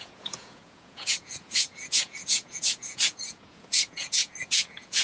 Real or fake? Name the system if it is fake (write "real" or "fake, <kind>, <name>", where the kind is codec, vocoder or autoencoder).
fake, vocoder, Vocos